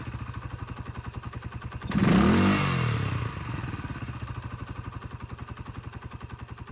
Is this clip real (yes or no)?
yes